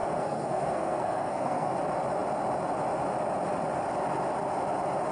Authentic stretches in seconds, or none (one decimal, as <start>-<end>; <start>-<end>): 1.7-5.1